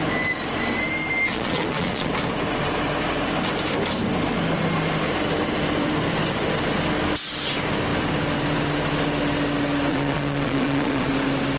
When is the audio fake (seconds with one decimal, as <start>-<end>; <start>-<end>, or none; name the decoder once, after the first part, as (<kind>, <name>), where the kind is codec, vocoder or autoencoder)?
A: 1.3-2.1 (vocoder, Vocos); 9.9-11.1